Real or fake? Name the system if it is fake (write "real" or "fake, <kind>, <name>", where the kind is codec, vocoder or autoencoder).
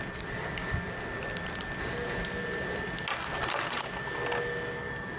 real